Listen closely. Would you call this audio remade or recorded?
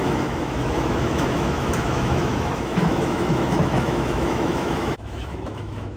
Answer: remade